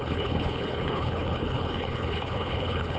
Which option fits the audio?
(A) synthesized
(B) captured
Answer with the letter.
A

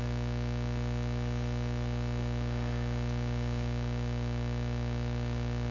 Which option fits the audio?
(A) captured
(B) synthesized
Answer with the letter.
A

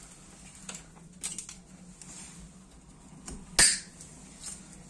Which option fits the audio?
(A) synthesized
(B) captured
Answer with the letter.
B